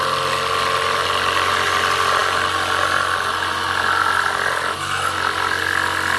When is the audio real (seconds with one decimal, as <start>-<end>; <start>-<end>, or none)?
0.0-6.2